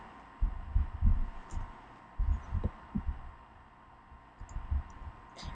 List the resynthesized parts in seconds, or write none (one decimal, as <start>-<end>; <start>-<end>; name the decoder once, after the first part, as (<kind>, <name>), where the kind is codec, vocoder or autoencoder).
none